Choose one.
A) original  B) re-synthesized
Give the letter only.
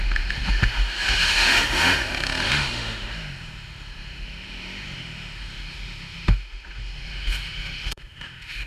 B